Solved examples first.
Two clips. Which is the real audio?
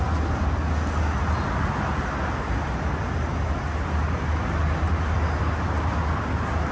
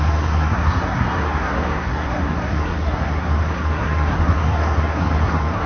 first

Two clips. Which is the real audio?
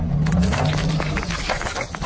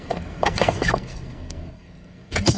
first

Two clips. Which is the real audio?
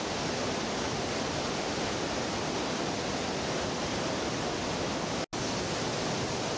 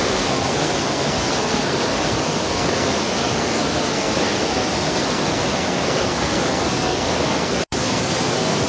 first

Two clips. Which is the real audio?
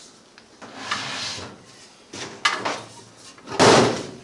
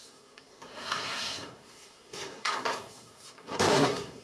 first